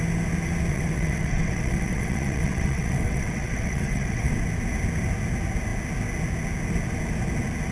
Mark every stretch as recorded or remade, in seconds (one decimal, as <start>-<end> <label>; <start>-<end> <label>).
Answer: 0.0-0.7 recorded; 0.7-4.3 remade; 4.3-7.7 recorded